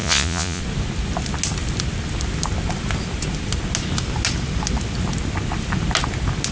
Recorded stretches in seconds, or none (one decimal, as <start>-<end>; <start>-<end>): 0.6-6.5